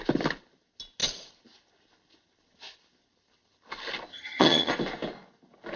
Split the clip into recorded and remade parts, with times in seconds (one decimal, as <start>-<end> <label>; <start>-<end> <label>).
0.0-4.1 recorded; 4.1-4.7 remade; 4.7-5.8 recorded